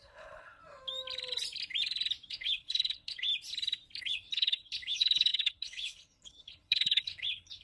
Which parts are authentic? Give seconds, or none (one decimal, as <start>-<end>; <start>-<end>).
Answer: 0.6-2.3; 3.3-4.0